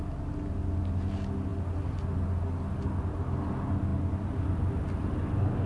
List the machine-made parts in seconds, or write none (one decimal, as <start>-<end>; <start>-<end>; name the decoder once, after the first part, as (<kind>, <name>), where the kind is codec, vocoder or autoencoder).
none